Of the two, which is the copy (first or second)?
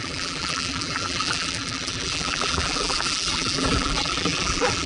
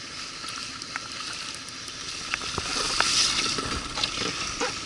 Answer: first